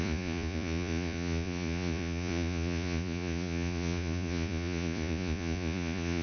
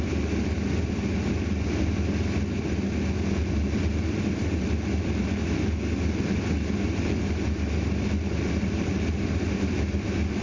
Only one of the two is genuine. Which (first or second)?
second